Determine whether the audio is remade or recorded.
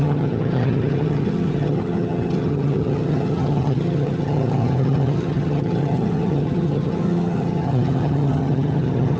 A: remade